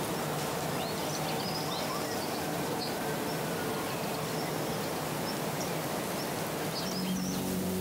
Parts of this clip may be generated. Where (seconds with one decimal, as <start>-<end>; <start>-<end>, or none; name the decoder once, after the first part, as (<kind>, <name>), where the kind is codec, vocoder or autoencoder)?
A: none